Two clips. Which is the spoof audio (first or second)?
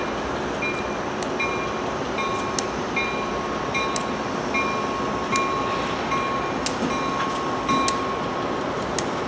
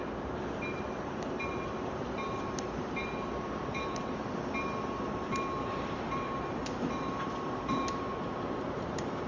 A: second